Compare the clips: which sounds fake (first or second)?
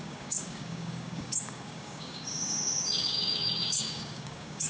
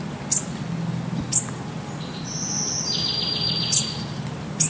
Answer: first